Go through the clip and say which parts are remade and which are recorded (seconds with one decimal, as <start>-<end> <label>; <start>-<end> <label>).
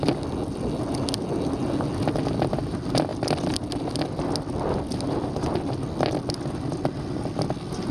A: 0.0-7.9 recorded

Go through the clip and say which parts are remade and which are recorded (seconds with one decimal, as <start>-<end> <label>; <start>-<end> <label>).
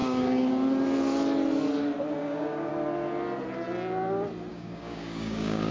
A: 0.0-0.5 remade; 0.5-2.2 recorded; 2.2-2.7 remade; 2.7-4.5 recorded; 4.5-5.7 remade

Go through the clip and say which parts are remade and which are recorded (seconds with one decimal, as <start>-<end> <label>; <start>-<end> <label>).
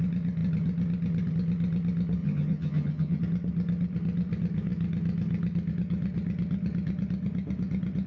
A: 0.0-2.2 recorded; 2.2-3.2 remade; 3.2-8.1 recorded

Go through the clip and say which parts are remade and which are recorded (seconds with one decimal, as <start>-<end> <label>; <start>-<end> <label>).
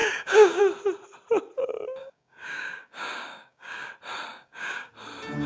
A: 0.0-0.6 remade; 0.6-2.0 recorded; 2.0-3.9 remade; 3.9-4.3 recorded; 4.3-4.9 remade; 4.9-5.5 recorded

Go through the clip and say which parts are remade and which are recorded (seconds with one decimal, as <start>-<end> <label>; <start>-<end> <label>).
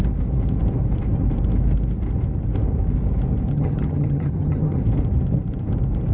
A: 0.0-3.5 recorded; 3.5-4.8 remade; 4.8-6.1 recorded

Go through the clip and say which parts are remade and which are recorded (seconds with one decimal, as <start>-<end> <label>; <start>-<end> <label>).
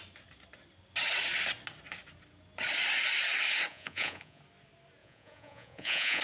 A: 0.0-3.7 recorded; 3.7-4.4 remade; 4.4-5.0 recorded; 5.0-6.2 remade